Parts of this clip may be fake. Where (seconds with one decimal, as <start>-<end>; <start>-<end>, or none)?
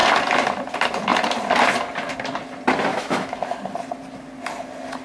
2.9-3.4